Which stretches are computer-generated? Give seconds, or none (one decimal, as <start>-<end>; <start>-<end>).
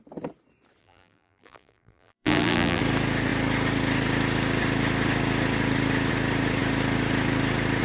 0.8-2.8